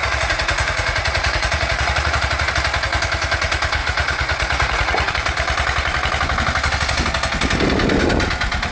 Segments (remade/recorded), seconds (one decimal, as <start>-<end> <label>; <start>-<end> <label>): 0.0-2.5 remade; 2.5-3.8 recorded; 3.8-5.1 remade; 5.1-8.7 recorded